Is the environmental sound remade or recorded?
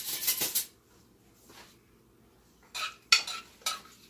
recorded